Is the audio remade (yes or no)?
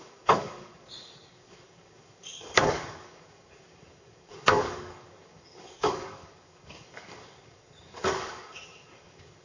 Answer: yes